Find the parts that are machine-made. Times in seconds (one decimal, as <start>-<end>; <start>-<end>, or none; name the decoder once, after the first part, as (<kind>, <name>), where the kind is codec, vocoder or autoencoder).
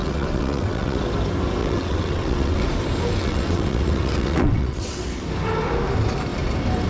0.0-1.0 (vocoder, WaveNeXt); 1.6-2.7; 3.2-5.2